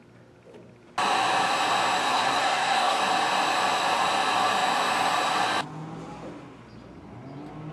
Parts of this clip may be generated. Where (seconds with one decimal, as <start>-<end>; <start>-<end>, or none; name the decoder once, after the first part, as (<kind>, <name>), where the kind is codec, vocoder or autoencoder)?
2.0-3.0 (codec, SNAC)